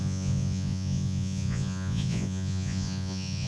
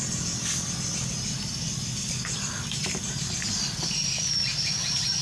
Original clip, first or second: second